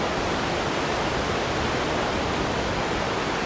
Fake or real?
real